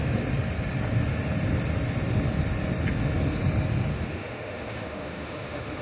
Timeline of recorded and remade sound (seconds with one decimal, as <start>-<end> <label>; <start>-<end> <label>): 0.0-3.9 recorded; 3.9-5.8 remade